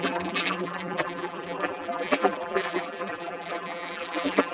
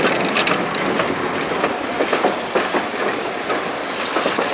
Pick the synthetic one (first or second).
first